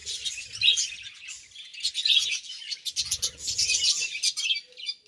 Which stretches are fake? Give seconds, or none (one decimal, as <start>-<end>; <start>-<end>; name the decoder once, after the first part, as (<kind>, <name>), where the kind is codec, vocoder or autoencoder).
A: none